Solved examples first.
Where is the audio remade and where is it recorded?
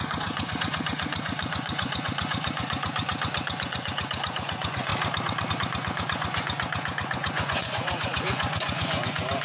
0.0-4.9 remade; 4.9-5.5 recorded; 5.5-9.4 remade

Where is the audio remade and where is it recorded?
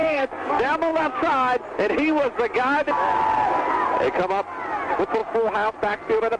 0.0-0.5 remade; 0.5-6.4 recorded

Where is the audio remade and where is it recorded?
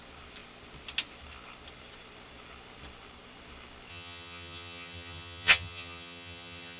0.0-3.9 recorded; 3.9-6.8 remade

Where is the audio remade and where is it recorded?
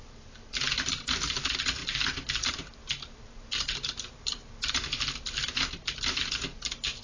0.0-7.0 recorded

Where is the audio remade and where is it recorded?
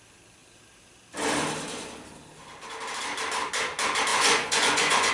0.0-4.1 recorded; 4.1-5.1 remade